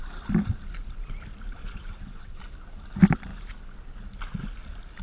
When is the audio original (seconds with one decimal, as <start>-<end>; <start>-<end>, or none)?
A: 0.0-1.6; 2.4-5.0